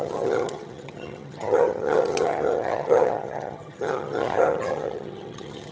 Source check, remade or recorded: remade